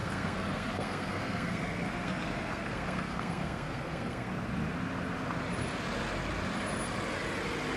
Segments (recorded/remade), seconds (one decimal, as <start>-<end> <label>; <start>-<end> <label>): 0.0-4.3 remade; 4.3-7.8 recorded